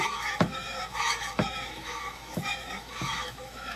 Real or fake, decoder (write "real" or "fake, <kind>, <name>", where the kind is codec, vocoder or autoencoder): fake, autoencoder, DAC-VAE